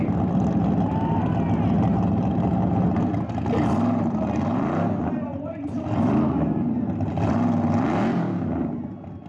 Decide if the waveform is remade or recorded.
recorded